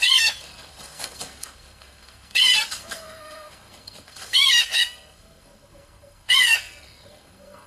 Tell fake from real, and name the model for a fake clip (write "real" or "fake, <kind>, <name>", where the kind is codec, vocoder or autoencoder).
fake, codec, SNAC